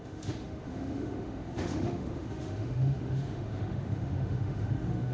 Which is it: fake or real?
fake